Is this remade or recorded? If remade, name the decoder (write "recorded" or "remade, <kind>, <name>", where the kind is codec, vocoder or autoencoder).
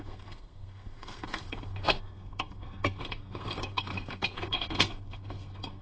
remade, codec, SNAC